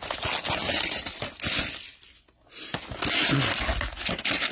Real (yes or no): yes